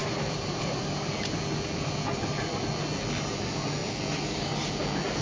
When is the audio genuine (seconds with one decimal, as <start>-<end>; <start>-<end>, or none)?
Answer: 0.0-5.2